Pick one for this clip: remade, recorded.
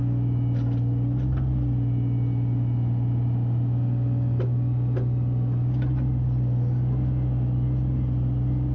recorded